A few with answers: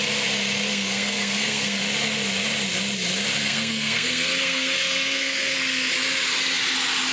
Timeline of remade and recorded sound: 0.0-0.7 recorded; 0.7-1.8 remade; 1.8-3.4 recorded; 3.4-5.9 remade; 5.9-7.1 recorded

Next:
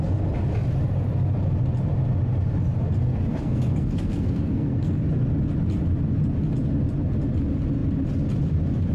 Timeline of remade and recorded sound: 0.0-3.3 recorded; 3.3-5.0 remade; 5.0-8.9 recorded

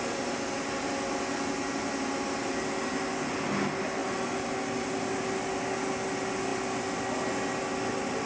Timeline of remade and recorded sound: 0.0-8.3 recorded

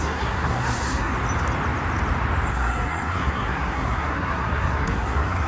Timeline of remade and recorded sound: 0.0-1.1 remade; 1.1-2.5 recorded; 2.5-5.5 remade

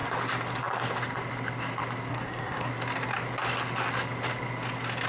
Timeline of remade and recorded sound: 0.0-2.1 recorded; 2.1-2.7 remade; 2.7-5.1 recorded